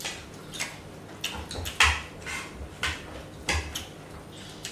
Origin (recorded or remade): recorded